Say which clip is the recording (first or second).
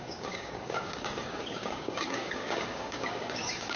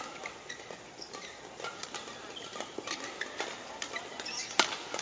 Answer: second